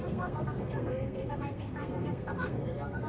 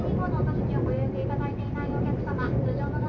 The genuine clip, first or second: second